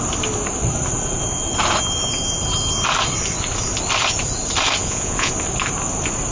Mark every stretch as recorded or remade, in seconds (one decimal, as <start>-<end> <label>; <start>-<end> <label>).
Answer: 0.0-4.8 recorded; 4.8-5.3 remade; 5.3-6.3 recorded

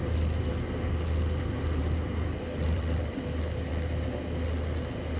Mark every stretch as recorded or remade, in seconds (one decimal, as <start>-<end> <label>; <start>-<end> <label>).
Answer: 0.0-0.5 remade; 0.5-1.8 recorded; 1.8-3.7 remade; 3.7-5.2 recorded

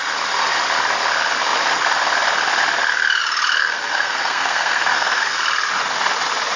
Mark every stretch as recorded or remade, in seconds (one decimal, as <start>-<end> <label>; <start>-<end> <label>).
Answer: 0.0-3.6 recorded; 3.6-5.3 remade; 5.3-6.6 recorded

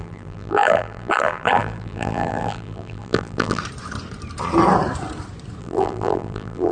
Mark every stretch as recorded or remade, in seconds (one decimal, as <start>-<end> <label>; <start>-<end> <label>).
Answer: 0.0-3.6 remade; 3.6-5.6 recorded; 5.6-6.7 remade

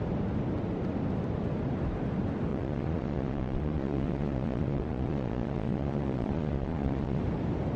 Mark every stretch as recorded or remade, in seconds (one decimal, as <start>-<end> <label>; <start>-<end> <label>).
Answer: 0.0-2.5 recorded; 2.5-7.2 remade; 7.2-7.8 recorded